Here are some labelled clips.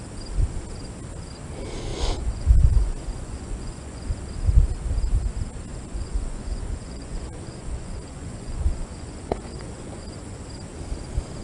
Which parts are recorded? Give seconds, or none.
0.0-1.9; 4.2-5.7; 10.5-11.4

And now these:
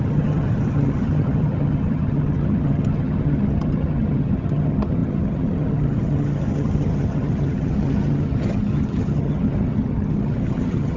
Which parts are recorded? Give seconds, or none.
none

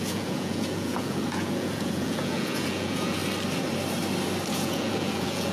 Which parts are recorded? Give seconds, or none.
3.2-4.5

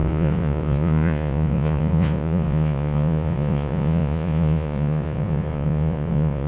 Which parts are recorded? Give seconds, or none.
none

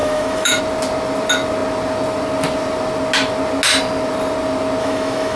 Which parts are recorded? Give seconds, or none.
0.6-4.8

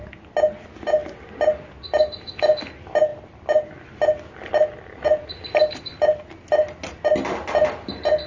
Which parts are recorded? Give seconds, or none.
0.0-8.3

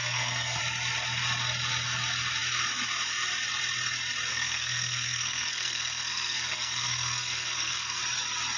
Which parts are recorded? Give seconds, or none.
0.6-4.3; 8.0-8.6

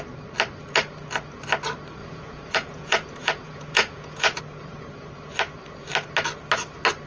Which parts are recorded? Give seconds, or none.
0.0-2.0; 4.4-7.1